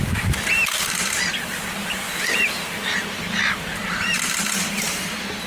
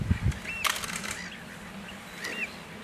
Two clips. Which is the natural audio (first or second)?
second